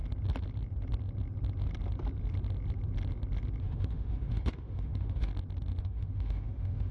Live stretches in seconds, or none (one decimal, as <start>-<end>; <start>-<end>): 0.0-3.6; 5.3-5.8